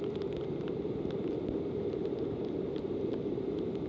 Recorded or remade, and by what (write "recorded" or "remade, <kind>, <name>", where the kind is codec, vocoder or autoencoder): recorded